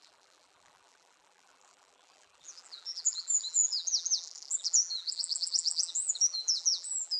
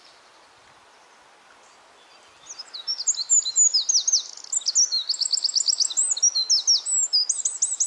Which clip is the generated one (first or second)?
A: first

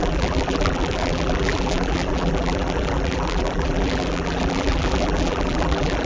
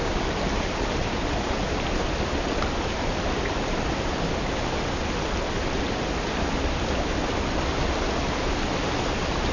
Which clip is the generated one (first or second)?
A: first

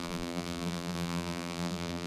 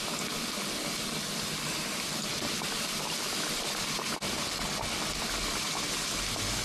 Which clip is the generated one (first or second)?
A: first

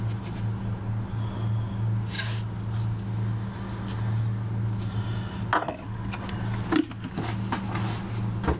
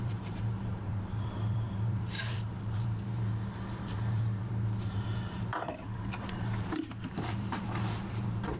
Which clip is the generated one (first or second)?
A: second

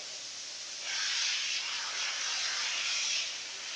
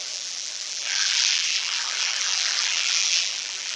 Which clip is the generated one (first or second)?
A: second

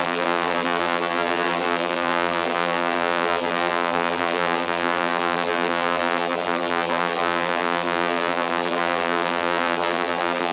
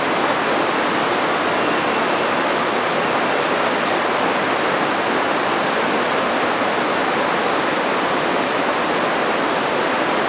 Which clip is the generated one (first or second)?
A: first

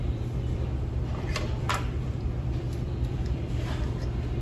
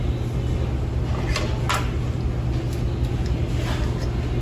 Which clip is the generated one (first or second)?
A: first